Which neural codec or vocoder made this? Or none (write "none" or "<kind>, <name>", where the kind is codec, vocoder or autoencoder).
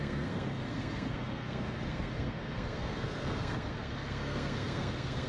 codec, SNAC